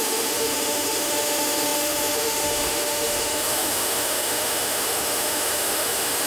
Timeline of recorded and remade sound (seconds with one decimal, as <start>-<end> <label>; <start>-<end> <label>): 0.0-6.3 remade